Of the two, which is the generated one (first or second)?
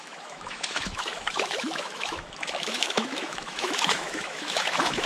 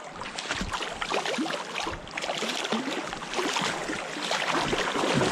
first